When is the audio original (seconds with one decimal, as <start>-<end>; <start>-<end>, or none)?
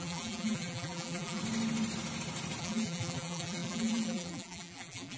1.4-2.6